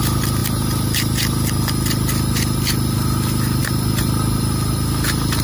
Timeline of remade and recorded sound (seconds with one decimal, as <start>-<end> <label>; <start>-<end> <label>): 0.0-5.4 recorded